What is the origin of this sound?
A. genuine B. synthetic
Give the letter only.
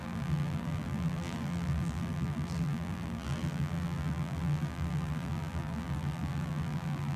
B